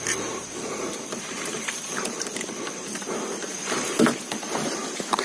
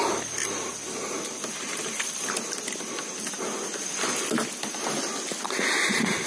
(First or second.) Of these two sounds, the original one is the second